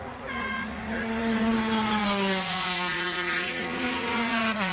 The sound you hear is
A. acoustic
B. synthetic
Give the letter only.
B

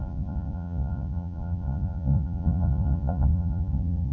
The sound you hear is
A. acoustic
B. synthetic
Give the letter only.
B